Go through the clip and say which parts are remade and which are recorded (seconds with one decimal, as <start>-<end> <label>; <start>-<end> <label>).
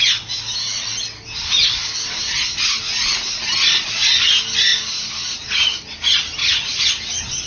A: 0.0-6.4 recorded; 6.4-6.9 remade; 6.9-7.5 recorded